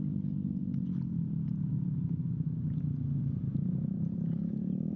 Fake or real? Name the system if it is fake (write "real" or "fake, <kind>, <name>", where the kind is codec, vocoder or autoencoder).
real